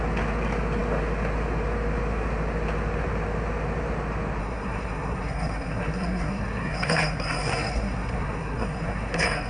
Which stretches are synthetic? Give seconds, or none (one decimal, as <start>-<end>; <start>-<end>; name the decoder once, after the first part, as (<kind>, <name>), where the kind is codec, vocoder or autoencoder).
4.4-9.5 (codec, SNAC)